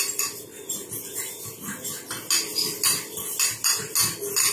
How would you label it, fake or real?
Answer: real